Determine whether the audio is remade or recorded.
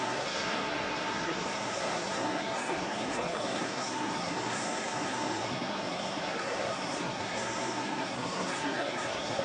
remade